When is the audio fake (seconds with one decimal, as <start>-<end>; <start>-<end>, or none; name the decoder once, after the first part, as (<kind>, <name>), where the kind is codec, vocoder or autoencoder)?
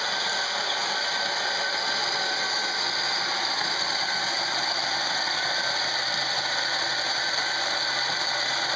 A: none